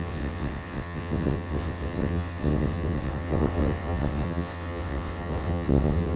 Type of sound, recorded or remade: remade